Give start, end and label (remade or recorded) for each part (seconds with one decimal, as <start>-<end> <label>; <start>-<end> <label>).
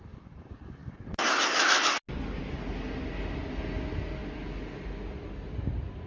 0.0-6.1 recorded